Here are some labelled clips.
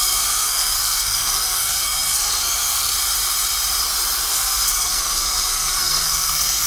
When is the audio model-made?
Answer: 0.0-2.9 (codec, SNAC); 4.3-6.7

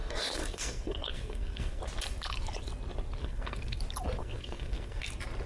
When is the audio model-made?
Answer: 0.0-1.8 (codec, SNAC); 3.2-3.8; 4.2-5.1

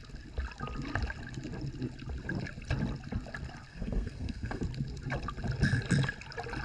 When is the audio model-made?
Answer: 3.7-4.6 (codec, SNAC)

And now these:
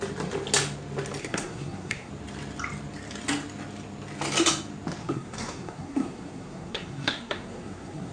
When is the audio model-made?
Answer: 1.2-2.1 (codec, SNAC); 5.0-8.1

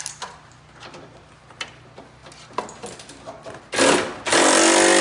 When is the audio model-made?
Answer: none

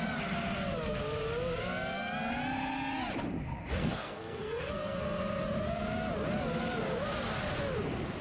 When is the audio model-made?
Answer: 3.8-5.2 (codec, SNAC)